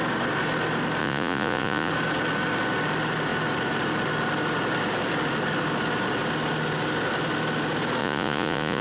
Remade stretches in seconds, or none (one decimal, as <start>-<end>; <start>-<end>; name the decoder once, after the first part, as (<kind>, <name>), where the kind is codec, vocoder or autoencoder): 1.0-1.9 (vocoder, Vocos); 8.0-8.8

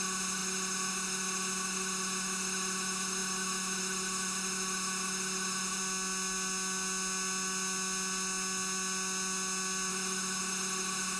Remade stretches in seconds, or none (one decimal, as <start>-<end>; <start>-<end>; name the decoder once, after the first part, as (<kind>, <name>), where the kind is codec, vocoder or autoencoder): 0.0-5.8 (autoencoder, DAC-VAE); 9.9-11.2